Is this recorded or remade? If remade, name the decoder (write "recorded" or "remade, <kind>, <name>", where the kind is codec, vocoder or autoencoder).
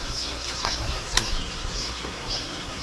remade, codec, SNAC